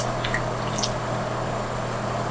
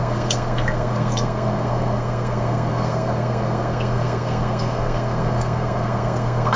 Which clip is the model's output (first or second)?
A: second